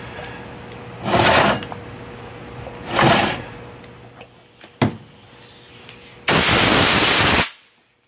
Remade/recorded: recorded